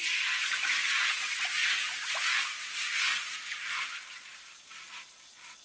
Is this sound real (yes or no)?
yes